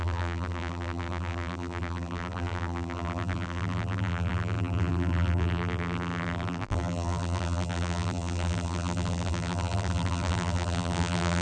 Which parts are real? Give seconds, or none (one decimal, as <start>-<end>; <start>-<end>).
none